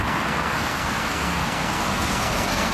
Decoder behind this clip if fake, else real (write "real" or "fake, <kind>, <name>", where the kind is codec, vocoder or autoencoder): fake, codec, SNAC